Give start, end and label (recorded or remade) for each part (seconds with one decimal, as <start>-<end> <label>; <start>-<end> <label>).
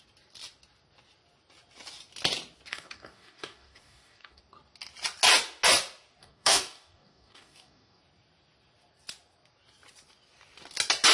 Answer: 0.0-2.7 recorded; 2.7-4.4 remade; 4.4-6.2 recorded; 6.2-8.0 remade; 8.0-11.1 recorded